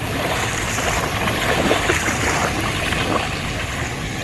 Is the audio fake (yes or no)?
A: no